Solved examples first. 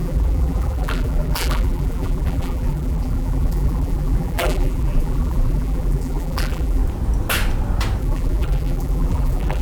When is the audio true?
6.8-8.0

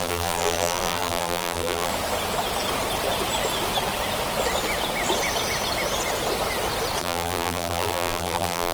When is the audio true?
1.9-7.0

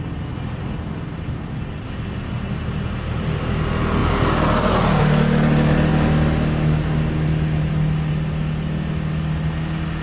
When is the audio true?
0.0-10.0

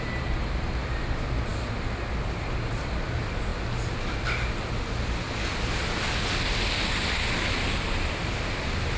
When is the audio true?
0.0-8.2

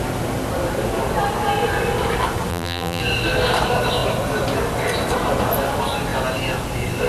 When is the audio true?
0.0-2.5; 3.0-7.1

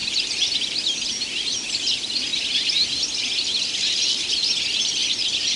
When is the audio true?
2.3-4.6

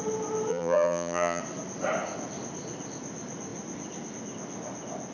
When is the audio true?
0.0-0.5; 1.4-5.1